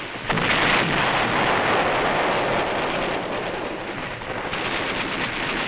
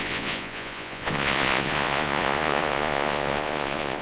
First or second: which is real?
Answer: first